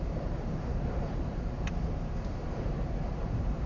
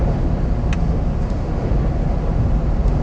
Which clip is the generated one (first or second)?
first